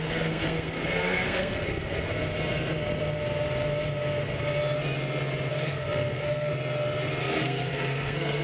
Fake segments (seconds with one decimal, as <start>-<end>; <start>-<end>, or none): 0.0-2.1; 5.5-6.5; 7.2-8.4